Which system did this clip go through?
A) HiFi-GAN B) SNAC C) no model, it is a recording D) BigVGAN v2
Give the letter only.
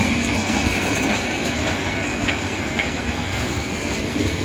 B